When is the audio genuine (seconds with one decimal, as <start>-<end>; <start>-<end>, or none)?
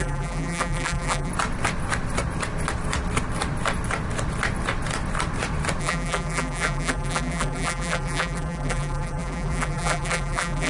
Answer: 1.3-5.8